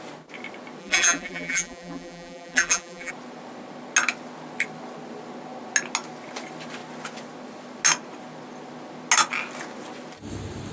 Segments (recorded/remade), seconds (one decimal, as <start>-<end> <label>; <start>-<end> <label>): 0.0-0.8 recorded; 0.8-3.1 remade; 3.1-10.7 recorded